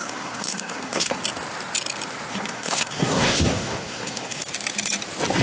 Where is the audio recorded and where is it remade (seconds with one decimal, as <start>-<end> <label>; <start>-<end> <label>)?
0.0-1.2 remade; 1.2-2.3 recorded; 2.3-4.4 remade; 4.4-5.4 recorded